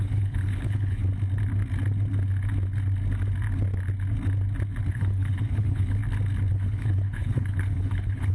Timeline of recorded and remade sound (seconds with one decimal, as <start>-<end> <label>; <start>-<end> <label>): 0.0-1.0 remade; 1.0-4.9 recorded; 4.9-6.0 remade; 6.0-6.5 recorded; 6.5-8.3 remade